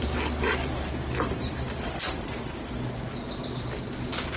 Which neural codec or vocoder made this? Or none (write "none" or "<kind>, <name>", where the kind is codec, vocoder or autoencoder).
none